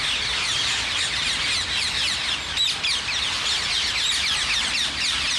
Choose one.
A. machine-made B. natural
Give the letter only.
B